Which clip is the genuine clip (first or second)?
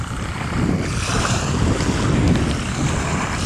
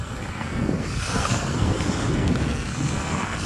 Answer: first